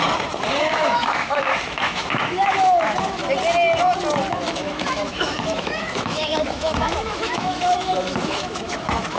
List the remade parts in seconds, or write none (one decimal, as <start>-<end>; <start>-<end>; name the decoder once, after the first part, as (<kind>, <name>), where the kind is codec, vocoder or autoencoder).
0.5-3.2 (autoencoder, DAC-VAE); 4.3-9.2